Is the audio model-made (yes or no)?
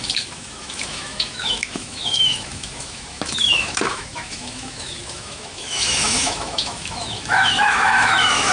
yes